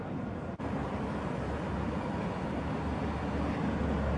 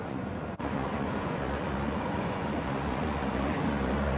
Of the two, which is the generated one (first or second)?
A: second